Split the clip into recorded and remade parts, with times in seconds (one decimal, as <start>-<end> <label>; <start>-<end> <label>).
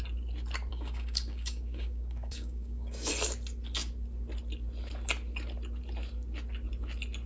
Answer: 0.0-0.7 recorded; 0.7-3.1 remade; 3.1-7.3 recorded